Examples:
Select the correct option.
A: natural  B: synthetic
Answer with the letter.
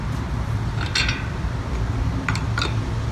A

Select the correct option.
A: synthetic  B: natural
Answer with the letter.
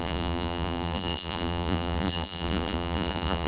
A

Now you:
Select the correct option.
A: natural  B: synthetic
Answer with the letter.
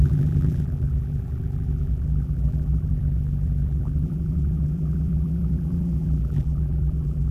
B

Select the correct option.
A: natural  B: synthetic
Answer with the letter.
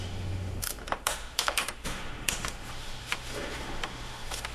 B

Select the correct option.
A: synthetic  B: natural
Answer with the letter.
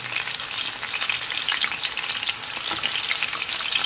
B